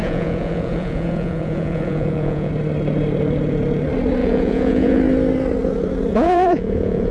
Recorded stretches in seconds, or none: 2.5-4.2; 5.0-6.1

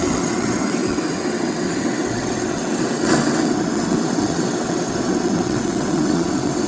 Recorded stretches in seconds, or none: none

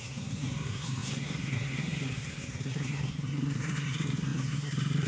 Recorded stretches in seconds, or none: none

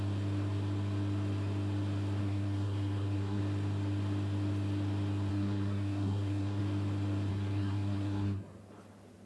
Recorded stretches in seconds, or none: 0.0-2.2; 3.4-5.3; 6.6-7.3; 8.6-9.3

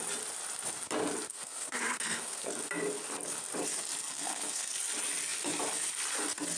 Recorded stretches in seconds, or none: 0.0-1.3; 2.5-4.1; 4.7-6.6

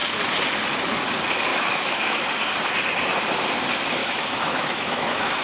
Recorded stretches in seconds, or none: 0.0-1.5; 2.2-4.0

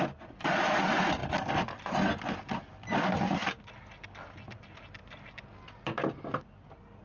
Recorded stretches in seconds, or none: 0.0-7.0